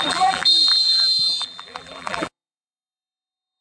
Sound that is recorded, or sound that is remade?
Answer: remade